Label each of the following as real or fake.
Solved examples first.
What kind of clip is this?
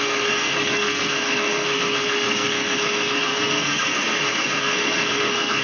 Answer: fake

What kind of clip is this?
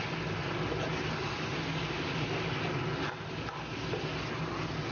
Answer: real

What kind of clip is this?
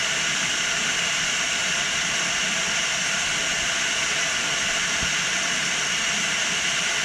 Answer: real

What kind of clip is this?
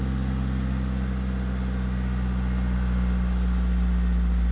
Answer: real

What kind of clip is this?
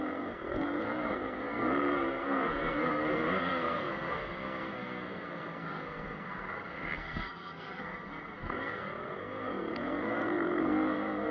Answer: fake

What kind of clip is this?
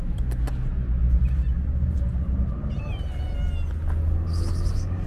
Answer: real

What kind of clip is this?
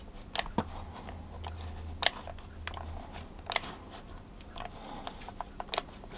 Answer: real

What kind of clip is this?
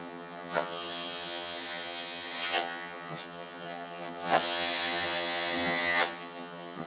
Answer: fake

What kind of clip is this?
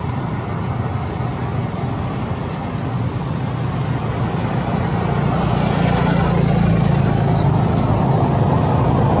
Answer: real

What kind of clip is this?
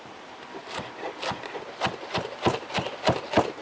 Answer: real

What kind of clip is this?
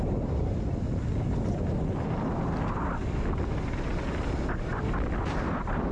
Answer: real